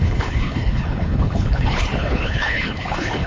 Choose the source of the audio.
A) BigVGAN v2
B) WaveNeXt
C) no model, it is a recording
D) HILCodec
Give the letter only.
D